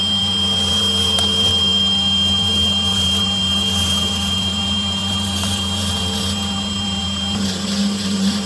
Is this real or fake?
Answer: fake